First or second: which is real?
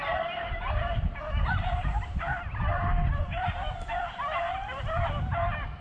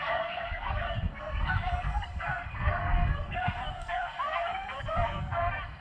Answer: first